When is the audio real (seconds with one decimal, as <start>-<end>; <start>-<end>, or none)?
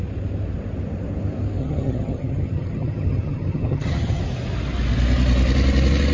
0.0-1.6; 4.2-6.1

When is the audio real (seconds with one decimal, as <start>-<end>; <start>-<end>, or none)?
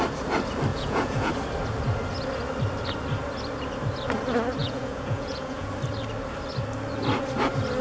0.0-0.7; 1.3-4.6; 5.7-7.8